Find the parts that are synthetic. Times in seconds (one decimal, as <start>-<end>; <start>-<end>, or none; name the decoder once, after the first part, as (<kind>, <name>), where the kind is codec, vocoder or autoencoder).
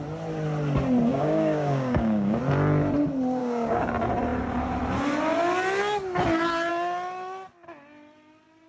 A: 1.1-2.4 (codec, DAC); 3.4-3.9